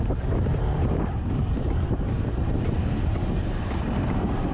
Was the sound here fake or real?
fake